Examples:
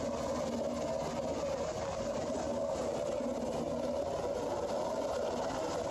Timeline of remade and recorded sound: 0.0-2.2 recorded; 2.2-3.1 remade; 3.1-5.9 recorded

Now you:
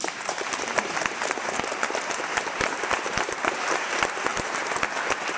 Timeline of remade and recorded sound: 0.0-4.3 remade; 4.3-5.4 recorded

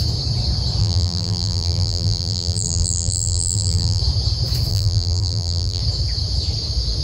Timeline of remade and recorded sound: 0.0-0.8 recorded; 0.8-4.0 remade; 4.0-4.7 recorded; 4.7-5.8 remade; 5.8-7.0 recorded

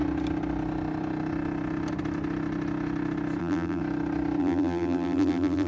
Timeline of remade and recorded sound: 0.0-3.4 recorded; 3.4-3.8 remade; 3.8-4.4 recorded; 4.4-5.7 remade